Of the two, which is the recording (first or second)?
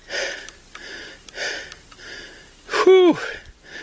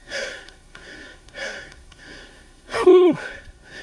first